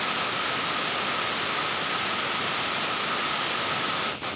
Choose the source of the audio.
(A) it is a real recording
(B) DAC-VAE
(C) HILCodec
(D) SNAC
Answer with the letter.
A